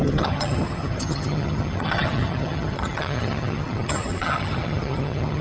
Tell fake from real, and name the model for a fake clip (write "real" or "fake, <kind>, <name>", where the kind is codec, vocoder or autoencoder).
fake, vocoder, HiFi-GAN